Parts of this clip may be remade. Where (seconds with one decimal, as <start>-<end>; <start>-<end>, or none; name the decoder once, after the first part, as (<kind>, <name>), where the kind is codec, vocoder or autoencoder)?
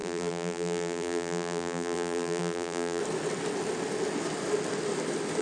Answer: 0.0-3.0 (vocoder, BigVGAN v2)